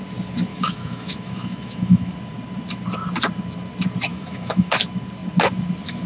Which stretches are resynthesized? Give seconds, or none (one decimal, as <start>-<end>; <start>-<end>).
0.5-2.1; 4.1-4.7